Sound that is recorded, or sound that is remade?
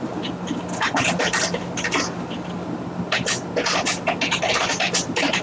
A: recorded